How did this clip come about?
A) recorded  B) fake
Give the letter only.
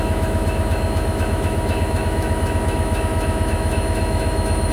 B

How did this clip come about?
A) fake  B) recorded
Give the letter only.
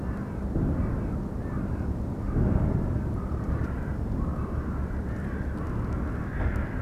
B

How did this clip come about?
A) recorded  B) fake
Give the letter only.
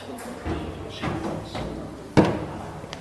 A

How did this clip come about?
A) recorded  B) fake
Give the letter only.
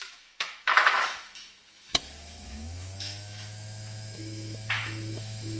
B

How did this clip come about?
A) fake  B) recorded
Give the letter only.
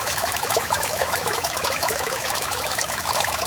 A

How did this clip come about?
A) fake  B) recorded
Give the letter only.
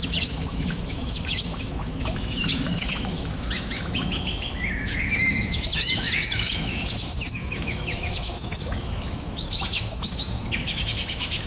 A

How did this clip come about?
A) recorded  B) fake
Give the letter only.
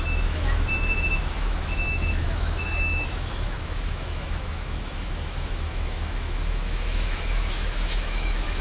B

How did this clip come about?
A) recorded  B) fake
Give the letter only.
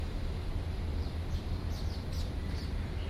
A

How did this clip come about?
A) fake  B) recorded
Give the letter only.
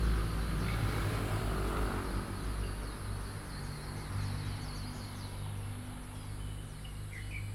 B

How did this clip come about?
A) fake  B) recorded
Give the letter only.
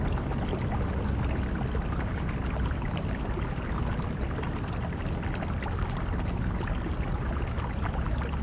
B